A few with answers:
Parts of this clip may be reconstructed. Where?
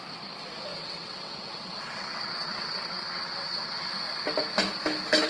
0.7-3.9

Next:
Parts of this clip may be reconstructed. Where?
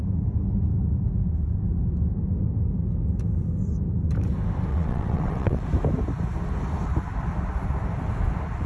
4.7-5.6